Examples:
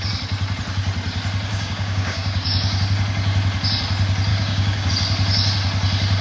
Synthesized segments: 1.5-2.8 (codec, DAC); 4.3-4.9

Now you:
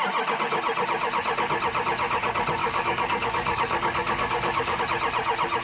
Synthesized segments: 2.6-4.8 (codec, DAC)

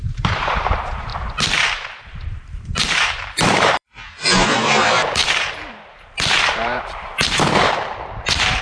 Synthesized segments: 0.0-1.1 (vocoder, BigVGAN v2); 2.0-8.6

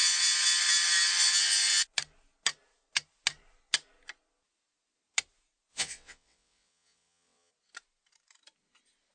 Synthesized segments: 5.7-7.5 (vocoder, WaveNeXt)